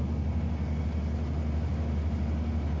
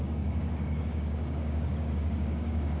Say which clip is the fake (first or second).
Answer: second